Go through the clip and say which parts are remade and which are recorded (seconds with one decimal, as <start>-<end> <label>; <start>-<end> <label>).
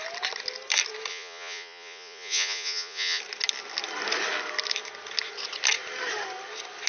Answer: 0.0-1.1 recorded; 1.1-3.2 remade; 3.2-6.9 recorded